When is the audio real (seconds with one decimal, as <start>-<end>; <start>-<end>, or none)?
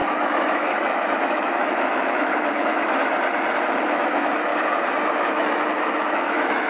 3.0-3.6; 4.5-5.1